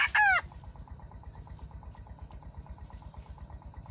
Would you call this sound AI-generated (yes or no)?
no